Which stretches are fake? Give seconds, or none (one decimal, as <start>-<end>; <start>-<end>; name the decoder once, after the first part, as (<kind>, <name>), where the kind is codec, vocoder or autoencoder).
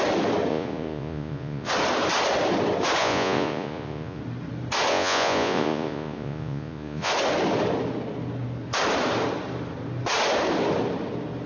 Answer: 0.5-1.7 (vocoder, Vocos); 3.0-4.2; 4.9-7.1